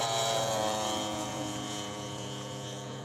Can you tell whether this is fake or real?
fake